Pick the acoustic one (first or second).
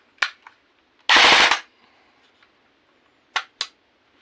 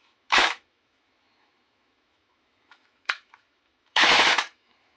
first